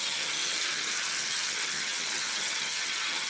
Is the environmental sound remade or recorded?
remade